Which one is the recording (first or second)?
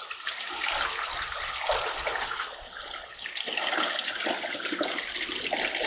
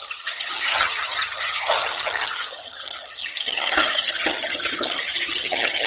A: first